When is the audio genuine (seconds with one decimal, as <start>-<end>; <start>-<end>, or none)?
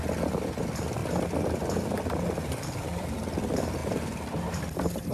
1.0-2.5